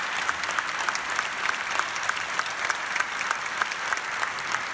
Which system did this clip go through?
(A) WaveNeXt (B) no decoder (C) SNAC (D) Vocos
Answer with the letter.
B